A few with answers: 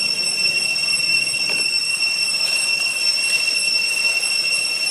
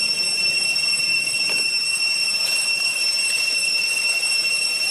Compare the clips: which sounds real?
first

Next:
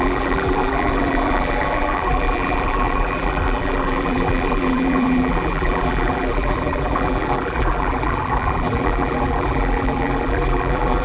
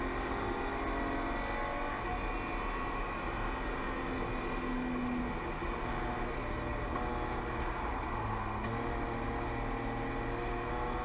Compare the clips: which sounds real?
second